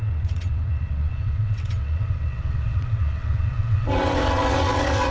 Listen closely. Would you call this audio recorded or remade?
remade